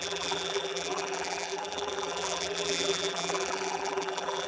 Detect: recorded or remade remade